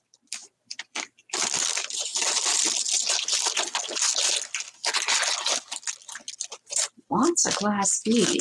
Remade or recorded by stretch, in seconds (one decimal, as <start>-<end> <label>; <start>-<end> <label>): 0.0-2.1 remade; 2.1-6.9 recorded; 6.9-7.4 remade; 7.4-8.0 recorded; 8.0-8.4 remade